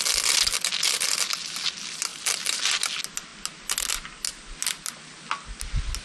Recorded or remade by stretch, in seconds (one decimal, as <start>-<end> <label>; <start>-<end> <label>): 0.0-6.0 recorded